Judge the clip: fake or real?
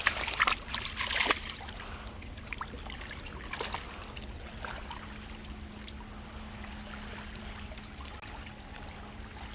real